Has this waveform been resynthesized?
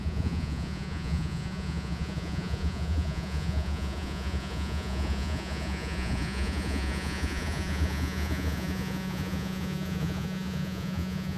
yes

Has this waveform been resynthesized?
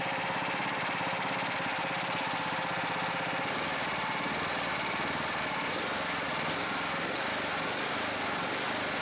no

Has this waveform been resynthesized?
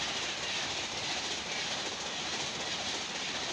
no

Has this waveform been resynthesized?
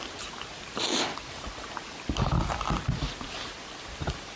no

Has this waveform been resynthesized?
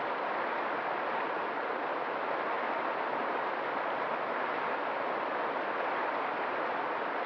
no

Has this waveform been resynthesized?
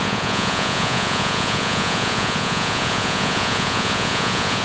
yes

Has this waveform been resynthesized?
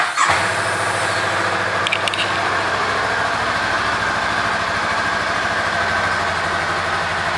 no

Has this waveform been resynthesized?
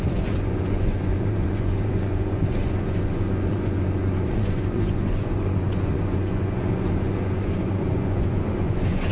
yes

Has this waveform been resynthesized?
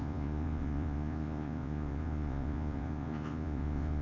yes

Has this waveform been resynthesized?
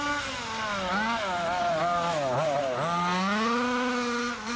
no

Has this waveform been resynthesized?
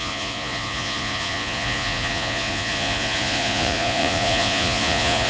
yes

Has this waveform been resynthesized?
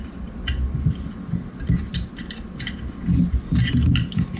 no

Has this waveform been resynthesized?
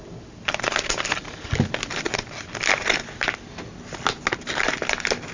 no